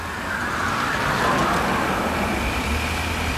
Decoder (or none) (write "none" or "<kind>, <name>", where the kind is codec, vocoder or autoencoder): none